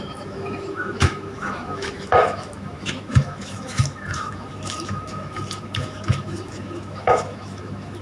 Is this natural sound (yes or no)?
no